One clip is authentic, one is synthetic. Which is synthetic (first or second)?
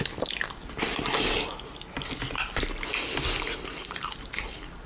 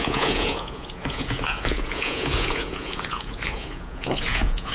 second